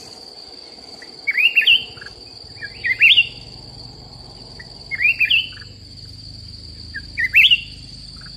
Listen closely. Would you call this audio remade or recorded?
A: recorded